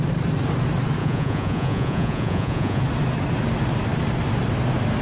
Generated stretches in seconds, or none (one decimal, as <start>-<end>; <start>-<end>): 1.0-2.8